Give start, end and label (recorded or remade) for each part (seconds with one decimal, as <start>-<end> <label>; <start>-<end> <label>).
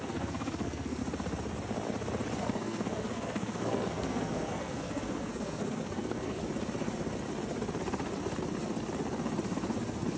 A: 0.0-1.0 remade; 1.0-2.4 recorded; 2.4-6.4 remade; 6.4-10.2 recorded